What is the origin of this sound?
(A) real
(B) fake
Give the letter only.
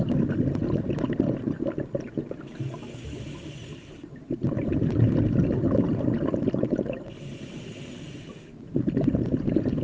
A